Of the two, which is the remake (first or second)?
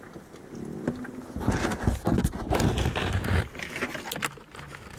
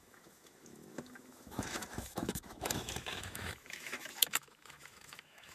second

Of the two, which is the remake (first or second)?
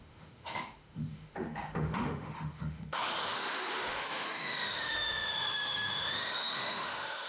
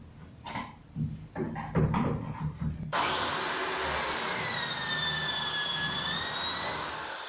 first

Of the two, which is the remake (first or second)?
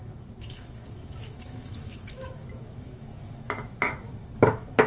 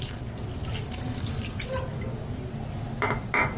first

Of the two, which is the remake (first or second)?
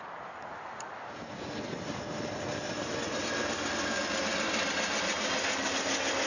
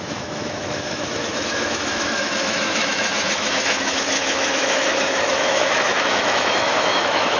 second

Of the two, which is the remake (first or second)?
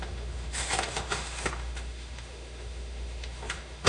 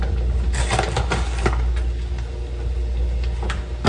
first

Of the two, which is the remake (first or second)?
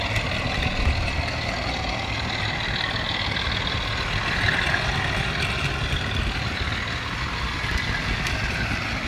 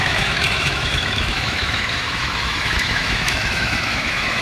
second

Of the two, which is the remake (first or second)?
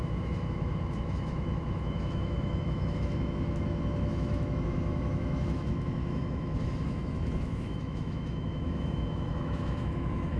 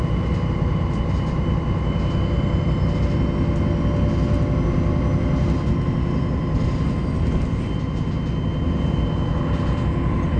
first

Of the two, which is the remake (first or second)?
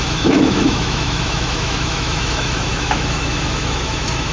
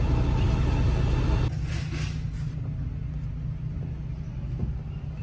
first